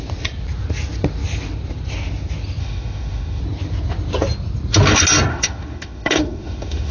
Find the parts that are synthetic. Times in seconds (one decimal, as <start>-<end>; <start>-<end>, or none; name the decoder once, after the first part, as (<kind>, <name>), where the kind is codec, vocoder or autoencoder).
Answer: 2.6-3.4 (autoencoder, DAC-VAE); 5.3-6.9